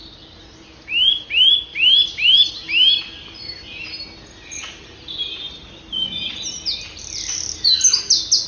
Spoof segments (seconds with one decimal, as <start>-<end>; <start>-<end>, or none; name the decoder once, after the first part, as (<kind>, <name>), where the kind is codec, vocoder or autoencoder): none